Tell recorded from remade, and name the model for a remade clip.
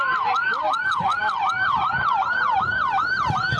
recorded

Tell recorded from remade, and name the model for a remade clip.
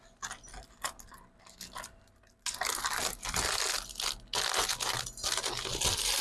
recorded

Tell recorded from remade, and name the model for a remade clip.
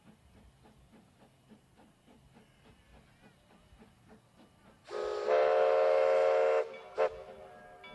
recorded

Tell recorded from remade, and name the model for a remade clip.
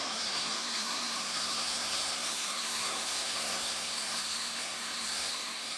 remade, codec, SNAC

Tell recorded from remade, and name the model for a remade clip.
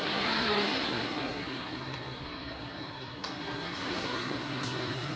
remade, codec, SNAC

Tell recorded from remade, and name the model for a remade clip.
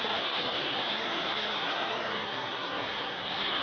remade, codec, SNAC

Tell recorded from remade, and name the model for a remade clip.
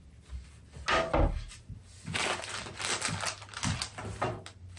recorded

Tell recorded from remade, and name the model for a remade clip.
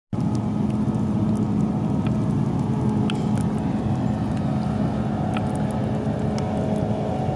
recorded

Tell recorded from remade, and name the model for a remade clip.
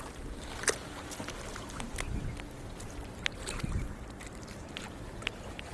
recorded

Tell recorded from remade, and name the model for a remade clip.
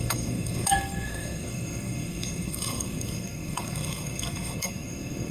remade, codec, SNAC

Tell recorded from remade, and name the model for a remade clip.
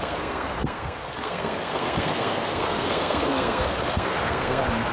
remade, codec, SNAC